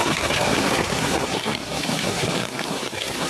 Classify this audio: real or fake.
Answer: fake